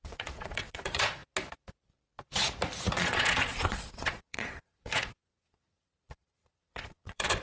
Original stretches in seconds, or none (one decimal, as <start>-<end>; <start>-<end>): 1.2-2.9